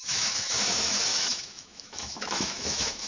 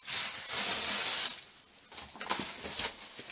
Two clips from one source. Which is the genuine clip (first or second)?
second